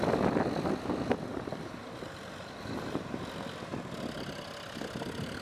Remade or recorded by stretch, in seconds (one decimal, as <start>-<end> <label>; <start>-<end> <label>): 0.0-1.3 recorded; 1.3-3.2 remade; 3.2-5.4 recorded